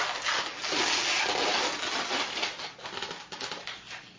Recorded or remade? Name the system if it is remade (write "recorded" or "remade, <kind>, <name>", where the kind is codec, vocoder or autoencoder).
recorded